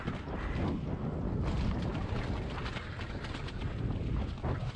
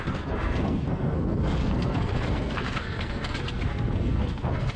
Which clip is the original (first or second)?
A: first